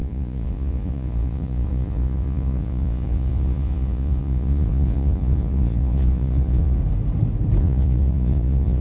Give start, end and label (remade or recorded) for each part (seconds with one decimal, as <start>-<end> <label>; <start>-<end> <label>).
0.0-6.8 remade; 6.8-7.6 recorded; 7.6-8.8 remade

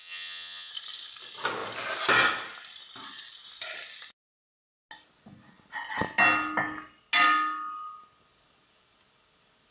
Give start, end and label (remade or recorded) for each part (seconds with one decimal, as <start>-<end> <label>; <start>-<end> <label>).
0.0-0.7 remade; 0.7-9.7 recorded

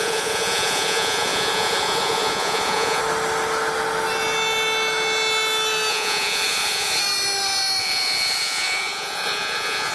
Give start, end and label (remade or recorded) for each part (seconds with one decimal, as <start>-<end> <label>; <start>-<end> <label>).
0.0-3.0 remade; 3.0-5.9 recorded; 5.9-7.0 remade; 7.0-7.8 recorded; 7.8-9.9 remade

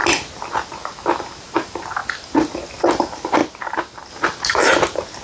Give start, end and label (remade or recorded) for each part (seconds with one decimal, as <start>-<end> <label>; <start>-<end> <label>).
0.0-5.2 recorded